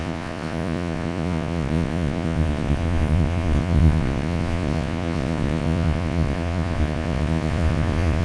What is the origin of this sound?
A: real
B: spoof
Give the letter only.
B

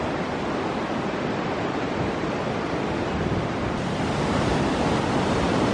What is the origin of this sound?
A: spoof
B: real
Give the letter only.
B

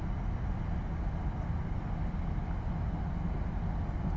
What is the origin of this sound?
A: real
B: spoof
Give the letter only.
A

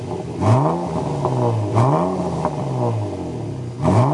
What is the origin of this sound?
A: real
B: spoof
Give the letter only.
A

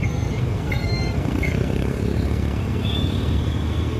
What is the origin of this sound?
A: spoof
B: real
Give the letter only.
A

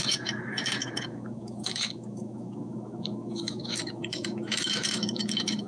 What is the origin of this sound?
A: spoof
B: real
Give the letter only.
A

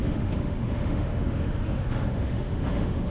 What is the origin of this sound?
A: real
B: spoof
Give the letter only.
B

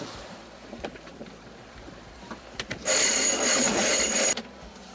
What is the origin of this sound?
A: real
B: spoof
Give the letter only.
B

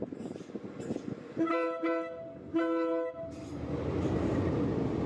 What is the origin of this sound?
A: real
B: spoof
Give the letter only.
A